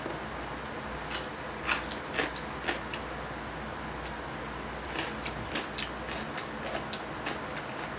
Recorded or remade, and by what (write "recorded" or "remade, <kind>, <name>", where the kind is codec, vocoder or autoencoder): recorded